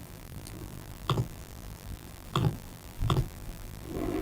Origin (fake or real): fake